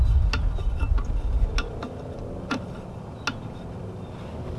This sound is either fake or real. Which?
real